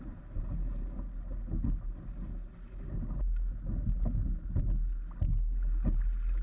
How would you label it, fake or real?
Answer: real